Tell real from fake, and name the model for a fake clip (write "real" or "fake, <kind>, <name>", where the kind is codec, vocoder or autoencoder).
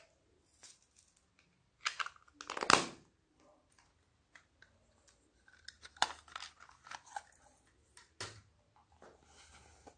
real